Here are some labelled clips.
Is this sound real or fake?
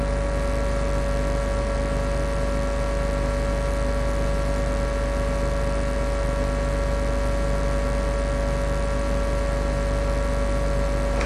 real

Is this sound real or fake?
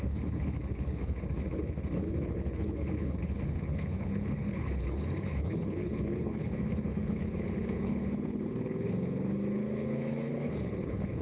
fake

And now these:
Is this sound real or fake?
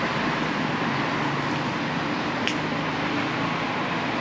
real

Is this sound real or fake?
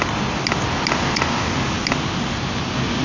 real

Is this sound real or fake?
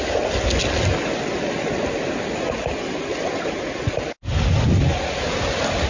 real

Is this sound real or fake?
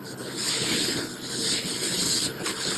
fake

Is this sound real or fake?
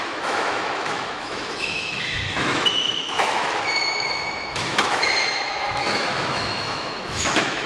fake